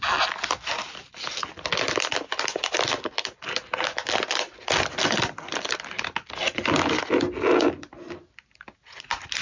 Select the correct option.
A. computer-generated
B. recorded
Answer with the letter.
B